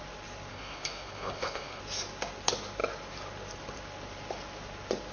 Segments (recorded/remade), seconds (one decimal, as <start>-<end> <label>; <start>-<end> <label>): 0.0-0.5 recorded; 0.5-1.8 remade; 1.8-5.1 recorded